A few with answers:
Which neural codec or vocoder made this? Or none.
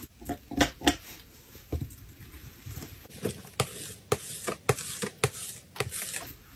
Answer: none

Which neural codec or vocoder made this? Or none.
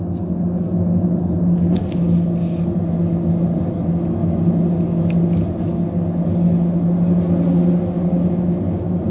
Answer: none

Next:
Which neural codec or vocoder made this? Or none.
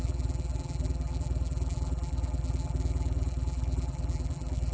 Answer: vocoder, BigVGAN v2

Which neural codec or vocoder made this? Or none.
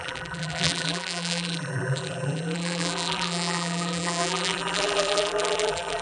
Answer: vocoder, BigVGAN v2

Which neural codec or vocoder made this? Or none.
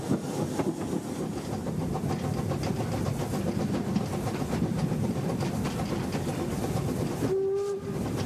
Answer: none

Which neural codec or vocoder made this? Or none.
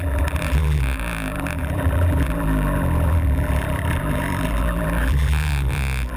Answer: vocoder, BigVGAN v2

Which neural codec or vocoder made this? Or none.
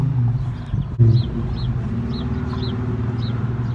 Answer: none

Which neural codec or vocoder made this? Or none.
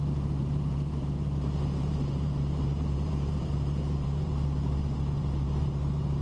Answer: vocoder, BigVGAN v2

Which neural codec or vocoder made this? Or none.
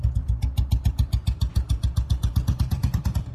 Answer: vocoder, BigVGAN v2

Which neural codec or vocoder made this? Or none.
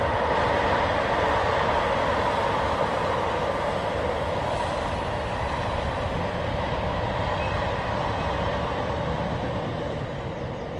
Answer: none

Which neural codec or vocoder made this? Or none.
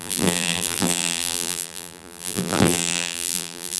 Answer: vocoder, BigVGAN v2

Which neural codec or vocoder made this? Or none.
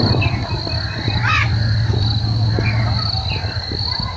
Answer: none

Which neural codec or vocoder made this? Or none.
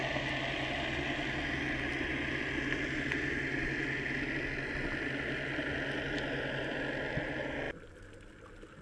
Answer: none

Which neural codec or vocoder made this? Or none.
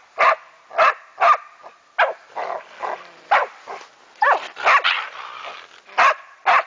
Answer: none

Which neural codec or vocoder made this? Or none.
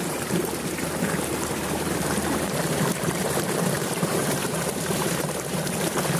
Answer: vocoder, BigVGAN v2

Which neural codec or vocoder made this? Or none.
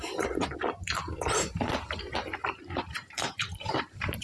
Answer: vocoder, BigVGAN v2